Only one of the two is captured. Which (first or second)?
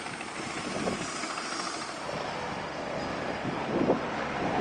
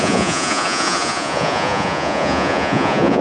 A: first